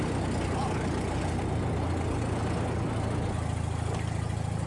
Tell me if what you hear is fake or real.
real